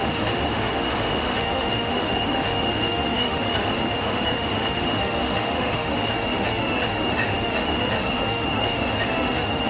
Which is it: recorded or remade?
remade